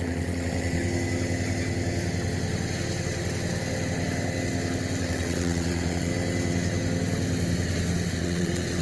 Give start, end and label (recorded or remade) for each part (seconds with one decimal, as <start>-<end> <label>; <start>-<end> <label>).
0.0-0.8 remade; 0.8-5.0 recorded; 5.0-6.1 remade; 6.1-8.1 recorded; 8.1-8.8 remade